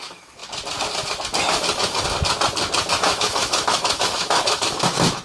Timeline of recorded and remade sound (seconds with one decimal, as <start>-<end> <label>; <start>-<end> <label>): 0.0-0.4 remade; 0.4-2.9 recorded; 2.9-5.2 remade